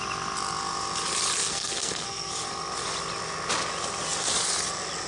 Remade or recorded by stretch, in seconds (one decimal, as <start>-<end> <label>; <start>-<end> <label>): 0.0-1.4 recorded; 1.4-2.3 remade; 2.3-5.1 recorded